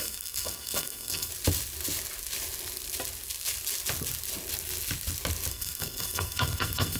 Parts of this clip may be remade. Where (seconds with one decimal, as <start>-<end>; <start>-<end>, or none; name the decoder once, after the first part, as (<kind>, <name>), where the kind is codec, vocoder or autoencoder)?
0.0-1.3 (codec, SNAC); 5.5-7.0